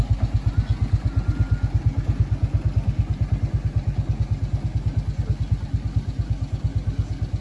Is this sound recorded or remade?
recorded